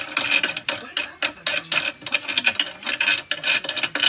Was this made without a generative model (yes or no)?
yes